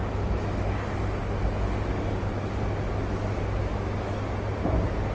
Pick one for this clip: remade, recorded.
recorded